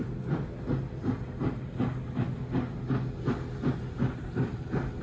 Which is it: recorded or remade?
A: recorded